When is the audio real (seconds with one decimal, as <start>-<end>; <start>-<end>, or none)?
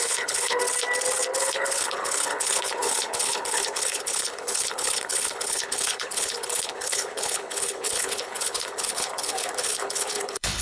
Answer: 0.6-1.4